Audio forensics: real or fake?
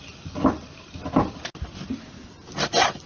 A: real